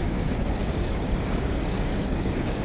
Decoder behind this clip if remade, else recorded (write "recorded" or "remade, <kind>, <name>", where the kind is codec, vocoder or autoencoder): remade, codec, DAC